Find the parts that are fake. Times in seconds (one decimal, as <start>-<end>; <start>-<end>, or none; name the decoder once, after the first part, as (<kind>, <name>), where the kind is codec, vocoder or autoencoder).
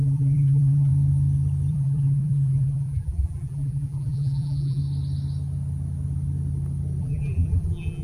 0.0-0.9 (vocoder, BigVGAN v2); 1.7-4.8; 7.0-8.0